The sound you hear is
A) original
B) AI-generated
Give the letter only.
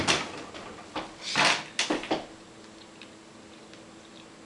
A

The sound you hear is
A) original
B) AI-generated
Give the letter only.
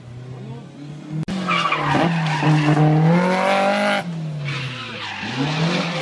A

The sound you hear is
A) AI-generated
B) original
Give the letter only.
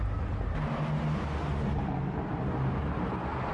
B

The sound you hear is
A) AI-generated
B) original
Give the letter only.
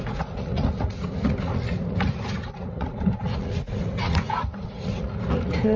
A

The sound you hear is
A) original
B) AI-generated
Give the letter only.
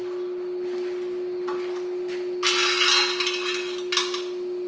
A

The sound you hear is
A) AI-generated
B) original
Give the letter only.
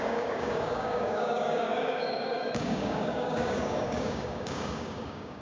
A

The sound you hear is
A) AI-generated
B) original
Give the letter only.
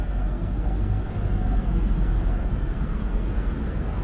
A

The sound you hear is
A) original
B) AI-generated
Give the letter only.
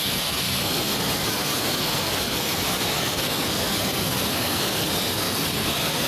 B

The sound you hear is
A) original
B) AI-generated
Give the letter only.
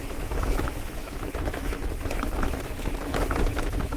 B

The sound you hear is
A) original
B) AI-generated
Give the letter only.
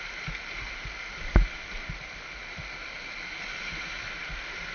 A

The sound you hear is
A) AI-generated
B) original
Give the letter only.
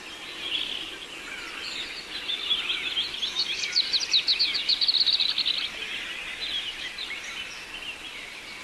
B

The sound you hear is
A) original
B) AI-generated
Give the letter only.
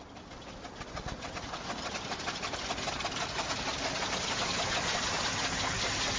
A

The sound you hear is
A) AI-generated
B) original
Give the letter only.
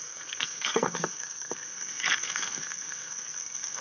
A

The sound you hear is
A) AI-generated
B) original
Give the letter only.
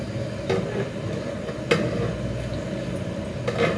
B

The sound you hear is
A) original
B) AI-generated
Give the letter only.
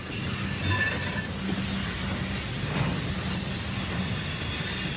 A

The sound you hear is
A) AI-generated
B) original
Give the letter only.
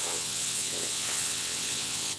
A